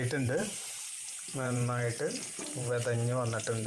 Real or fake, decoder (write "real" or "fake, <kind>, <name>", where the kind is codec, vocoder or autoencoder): fake, vocoder, BigVGAN v2